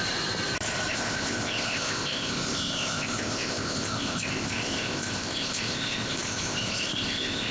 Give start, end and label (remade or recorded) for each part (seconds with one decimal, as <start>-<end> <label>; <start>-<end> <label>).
0.0-0.9 recorded; 0.9-7.5 remade